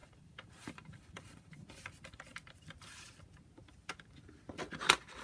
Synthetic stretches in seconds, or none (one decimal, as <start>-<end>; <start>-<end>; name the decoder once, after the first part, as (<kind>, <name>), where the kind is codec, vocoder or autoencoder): 0.0-1.5 (vocoder, BigVGAN v2)